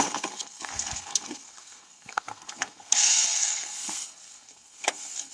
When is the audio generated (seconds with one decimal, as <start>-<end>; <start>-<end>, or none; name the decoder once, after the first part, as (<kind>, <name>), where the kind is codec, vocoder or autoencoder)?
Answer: 0.0-5.3 (codec, SNAC)

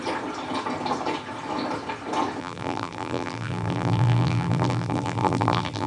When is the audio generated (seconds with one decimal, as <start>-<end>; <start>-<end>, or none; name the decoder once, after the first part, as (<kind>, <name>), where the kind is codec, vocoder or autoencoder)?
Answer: 2.4-5.9 (vocoder, BigVGAN v2)

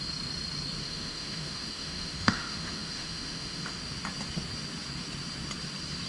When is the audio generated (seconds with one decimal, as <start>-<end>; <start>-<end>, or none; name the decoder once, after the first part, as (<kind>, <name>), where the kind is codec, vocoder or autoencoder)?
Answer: 0.8-3.8 (autoencoder, DAC-VAE)

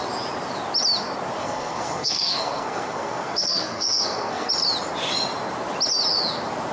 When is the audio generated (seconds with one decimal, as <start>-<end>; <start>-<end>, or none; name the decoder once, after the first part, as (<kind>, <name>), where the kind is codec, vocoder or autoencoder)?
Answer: 1.4-4.5 (codec, SNAC)

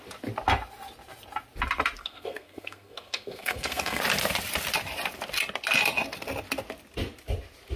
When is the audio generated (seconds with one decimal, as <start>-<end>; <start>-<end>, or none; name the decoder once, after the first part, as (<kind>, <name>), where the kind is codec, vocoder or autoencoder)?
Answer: 2.0-4.0 (codec, SNAC)

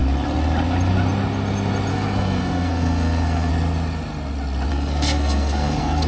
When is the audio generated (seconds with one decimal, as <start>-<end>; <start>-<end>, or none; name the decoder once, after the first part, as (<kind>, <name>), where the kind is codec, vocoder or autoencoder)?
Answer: 1.9-3.5 (codec, SNAC); 4.7-6.1